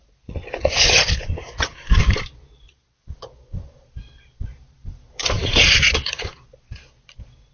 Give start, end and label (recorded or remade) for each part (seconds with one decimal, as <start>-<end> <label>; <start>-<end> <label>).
0.0-7.5 remade

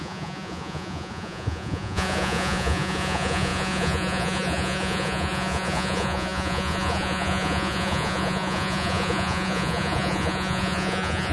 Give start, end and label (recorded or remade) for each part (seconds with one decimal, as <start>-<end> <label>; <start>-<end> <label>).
0.0-11.3 remade

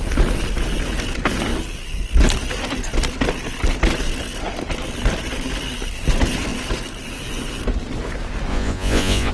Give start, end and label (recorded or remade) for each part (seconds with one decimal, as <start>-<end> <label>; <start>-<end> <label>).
0.0-8.5 recorded; 8.5-9.3 remade

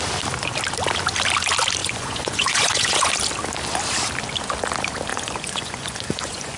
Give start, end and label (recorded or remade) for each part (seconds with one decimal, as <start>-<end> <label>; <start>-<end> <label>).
0.0-1.8 recorded; 1.8-3.1 remade; 3.1-5.1 recorded; 5.1-6.6 remade

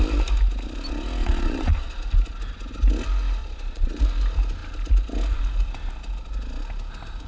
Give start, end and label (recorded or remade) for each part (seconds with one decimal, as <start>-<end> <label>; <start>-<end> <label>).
0.0-1.2 recorded; 1.2-2.0 remade; 2.0-3.4 recorded; 3.4-4.0 remade; 4.0-7.3 recorded

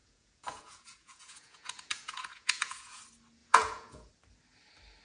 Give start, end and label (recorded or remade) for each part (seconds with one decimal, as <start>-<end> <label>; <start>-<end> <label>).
0.0-3.0 remade; 3.0-3.4 recorded; 3.4-4.1 remade; 4.1-5.0 recorded

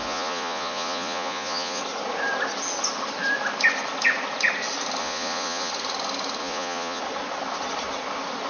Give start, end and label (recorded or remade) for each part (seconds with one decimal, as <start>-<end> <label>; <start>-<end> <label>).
0.0-1.8 remade; 1.8-5.0 recorded; 5.0-5.7 remade; 5.7-6.4 recorded; 6.4-7.0 remade; 7.0-8.5 recorded